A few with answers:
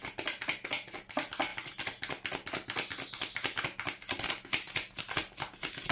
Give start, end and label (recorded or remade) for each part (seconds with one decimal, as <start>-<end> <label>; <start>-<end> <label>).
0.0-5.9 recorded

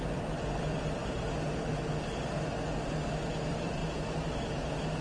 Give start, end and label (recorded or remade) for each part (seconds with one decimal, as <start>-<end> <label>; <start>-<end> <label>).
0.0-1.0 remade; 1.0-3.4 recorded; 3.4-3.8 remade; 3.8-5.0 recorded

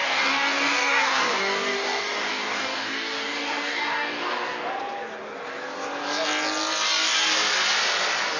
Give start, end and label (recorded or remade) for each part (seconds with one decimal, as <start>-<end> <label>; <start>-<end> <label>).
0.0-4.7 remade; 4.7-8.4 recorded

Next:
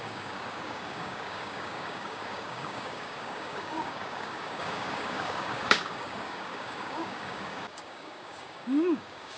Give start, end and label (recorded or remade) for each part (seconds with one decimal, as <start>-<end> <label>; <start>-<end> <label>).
0.0-9.4 remade

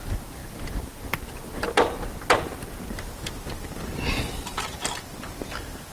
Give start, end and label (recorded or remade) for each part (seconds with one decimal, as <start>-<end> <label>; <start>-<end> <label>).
0.0-5.9 recorded

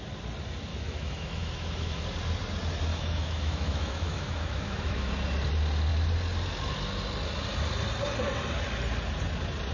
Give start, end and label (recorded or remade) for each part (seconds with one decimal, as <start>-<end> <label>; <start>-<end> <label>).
0.0-0.7 recorded; 0.7-2.0 remade; 2.0-2.9 recorded; 2.9-5.1 remade; 5.1-9.7 recorded

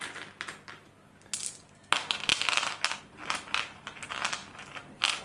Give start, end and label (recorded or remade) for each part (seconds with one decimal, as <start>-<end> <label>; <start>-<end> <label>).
0.0-5.2 recorded

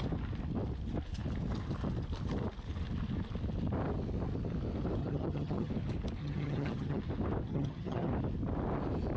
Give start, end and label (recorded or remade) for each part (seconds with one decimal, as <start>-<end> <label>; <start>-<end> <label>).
0.0-5.0 recorded; 5.0-5.7 remade; 5.7-6.2 recorded; 6.2-7.0 remade; 7.0-7.5 recorded; 7.5-8.1 remade; 8.1-9.2 recorded